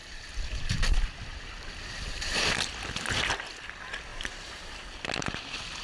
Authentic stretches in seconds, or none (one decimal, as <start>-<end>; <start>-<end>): 0.0-4.1; 4.8-5.8